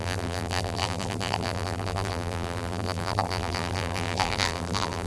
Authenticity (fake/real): fake